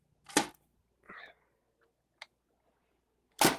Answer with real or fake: real